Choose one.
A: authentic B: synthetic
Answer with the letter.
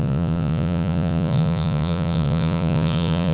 B